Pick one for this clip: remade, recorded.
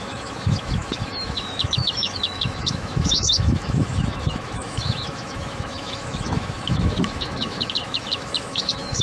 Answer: remade